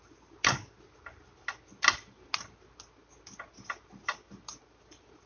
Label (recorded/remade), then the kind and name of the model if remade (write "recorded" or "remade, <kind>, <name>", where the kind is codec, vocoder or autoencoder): recorded